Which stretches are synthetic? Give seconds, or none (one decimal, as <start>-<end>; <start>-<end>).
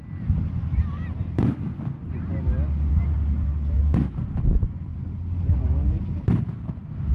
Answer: none